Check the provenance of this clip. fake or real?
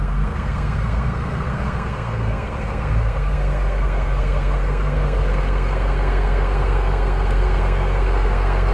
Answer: fake